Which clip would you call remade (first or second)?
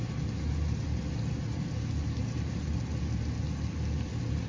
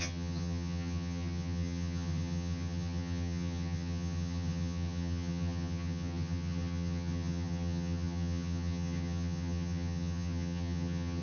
second